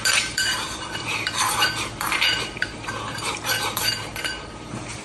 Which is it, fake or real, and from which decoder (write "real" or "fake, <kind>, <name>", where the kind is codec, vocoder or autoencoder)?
fake, vocoder, BigVGAN v2